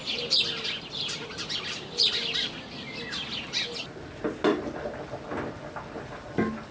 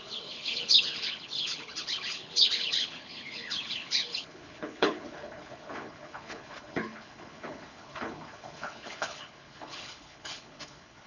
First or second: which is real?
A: first